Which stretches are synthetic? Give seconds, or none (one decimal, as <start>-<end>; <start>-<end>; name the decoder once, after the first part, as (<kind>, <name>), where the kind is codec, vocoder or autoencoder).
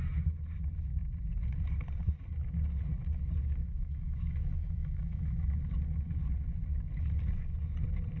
3.4-5.5 (autoencoder, DAC-VAE)